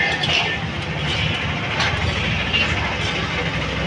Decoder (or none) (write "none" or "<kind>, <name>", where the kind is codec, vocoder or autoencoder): none